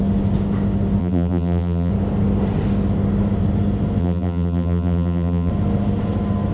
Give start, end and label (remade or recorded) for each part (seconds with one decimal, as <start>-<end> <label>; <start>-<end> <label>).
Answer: 0.0-1.0 recorded; 1.0-1.9 remade; 1.9-4.0 recorded; 4.0-5.5 remade; 5.5-6.5 recorded